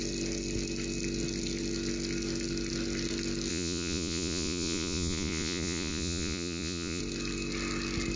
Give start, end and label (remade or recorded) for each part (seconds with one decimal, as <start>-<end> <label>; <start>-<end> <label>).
0.0-3.5 recorded; 3.5-7.0 remade; 7.0-8.2 recorded